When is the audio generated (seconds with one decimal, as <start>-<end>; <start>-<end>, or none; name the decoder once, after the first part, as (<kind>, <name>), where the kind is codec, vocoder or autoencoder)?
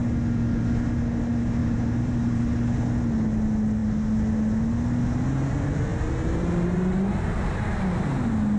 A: 1.6-2.4 (vocoder, BigVGAN v2); 5.9-7.8